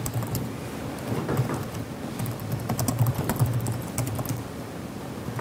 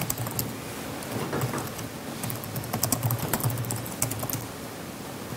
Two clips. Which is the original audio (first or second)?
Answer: second